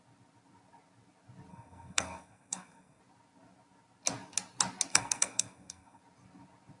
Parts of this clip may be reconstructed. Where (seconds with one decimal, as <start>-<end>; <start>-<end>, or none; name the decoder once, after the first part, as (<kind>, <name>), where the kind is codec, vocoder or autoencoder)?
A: 1.5-3.0 (codec, SNAC); 4.9-6.0

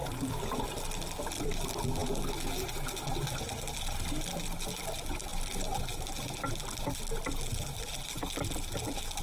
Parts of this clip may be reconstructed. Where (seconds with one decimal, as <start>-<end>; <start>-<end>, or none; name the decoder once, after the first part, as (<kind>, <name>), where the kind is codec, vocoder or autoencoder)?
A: none